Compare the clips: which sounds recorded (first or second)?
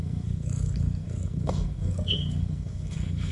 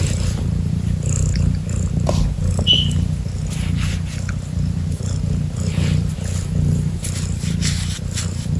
second